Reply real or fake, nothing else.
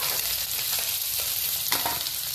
fake